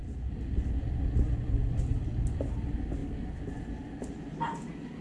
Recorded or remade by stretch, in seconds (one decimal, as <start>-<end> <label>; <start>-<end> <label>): 0.0-5.0 recorded